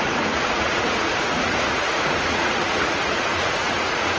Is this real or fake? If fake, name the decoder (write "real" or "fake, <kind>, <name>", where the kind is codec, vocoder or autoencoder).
fake, vocoder, Vocos